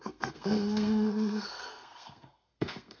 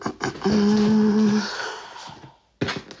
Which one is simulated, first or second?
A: first